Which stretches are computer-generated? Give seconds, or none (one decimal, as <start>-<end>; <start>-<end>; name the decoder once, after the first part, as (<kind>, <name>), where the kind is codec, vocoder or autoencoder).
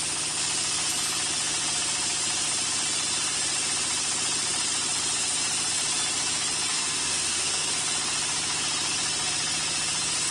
6.7-7.7 (codec, SNAC)